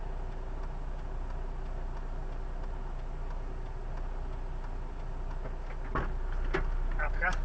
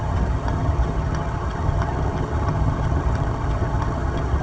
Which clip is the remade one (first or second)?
second